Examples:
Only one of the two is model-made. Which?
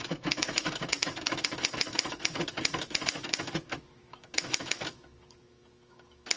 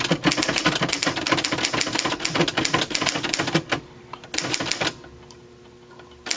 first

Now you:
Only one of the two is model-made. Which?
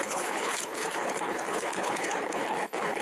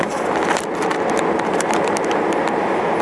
first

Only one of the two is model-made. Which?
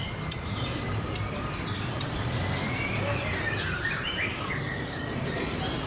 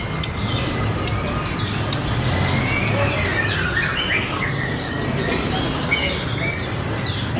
first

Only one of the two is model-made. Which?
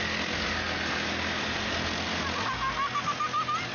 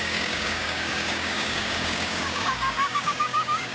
second